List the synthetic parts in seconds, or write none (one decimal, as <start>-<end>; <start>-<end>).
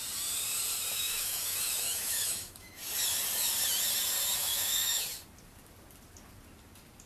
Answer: 0.9-2.8; 4.4-5.0